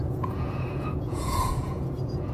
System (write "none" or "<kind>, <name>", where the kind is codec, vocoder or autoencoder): vocoder, Vocos